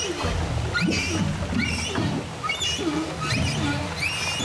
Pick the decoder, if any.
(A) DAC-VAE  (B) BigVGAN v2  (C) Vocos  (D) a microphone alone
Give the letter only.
D